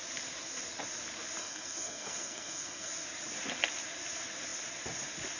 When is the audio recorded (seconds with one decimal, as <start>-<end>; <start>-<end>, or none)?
0.0-1.4; 2.9-5.4